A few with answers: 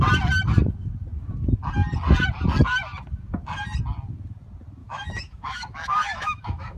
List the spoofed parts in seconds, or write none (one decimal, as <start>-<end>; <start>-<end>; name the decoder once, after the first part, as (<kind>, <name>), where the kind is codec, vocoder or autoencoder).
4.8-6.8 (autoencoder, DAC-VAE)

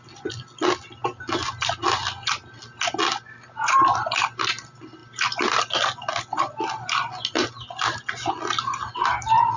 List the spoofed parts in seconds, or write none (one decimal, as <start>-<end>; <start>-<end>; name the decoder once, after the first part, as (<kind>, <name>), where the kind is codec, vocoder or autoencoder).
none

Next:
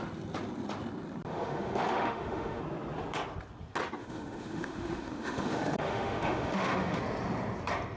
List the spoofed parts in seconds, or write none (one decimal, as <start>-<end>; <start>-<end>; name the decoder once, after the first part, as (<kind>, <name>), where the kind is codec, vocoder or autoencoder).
1.3-2.6 (autoencoder, DAC-VAE); 4.0-7.0

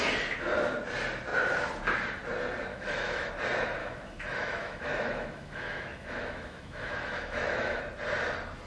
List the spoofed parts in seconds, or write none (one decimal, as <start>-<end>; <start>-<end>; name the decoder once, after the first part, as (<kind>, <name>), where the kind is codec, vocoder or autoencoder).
2.7-3.3 (autoencoder, DAC-VAE); 3.8-7.8